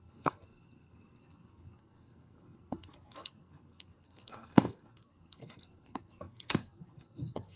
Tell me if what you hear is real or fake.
fake